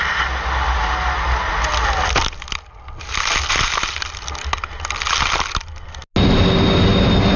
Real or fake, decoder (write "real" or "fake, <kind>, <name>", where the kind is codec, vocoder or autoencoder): real